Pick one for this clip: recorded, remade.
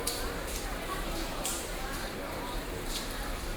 remade